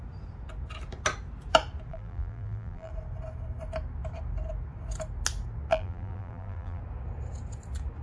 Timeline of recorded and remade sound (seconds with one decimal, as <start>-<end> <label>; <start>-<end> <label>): 0.0-1.9 recorded; 1.9-2.9 remade; 2.9-5.7 recorded; 5.7-6.8 remade; 6.8-8.0 recorded